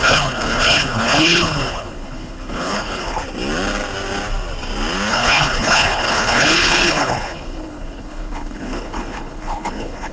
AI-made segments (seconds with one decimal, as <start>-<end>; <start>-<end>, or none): 0.0-3.2; 5.1-10.1

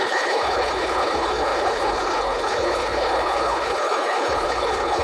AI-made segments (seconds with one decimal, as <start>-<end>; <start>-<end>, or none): 0.0-5.0

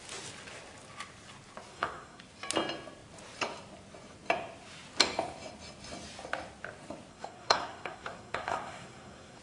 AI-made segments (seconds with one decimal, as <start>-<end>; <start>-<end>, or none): 1.7-2.2; 7.1-9.4

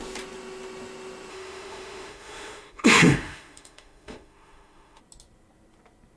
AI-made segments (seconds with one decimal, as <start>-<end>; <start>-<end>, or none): 1.3-5.0

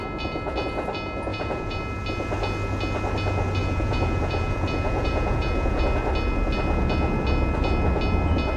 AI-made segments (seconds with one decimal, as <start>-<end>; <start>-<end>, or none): 1.3-1.8; 3.6-5.8